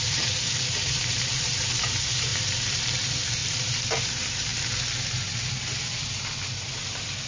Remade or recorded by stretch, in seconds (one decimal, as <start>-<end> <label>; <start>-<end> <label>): 0.0-3.4 remade; 3.4-4.0 recorded; 4.0-4.5 remade; 4.5-6.4 recorded; 6.4-7.3 remade